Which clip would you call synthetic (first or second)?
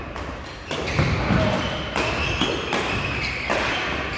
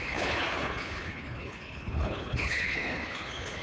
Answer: second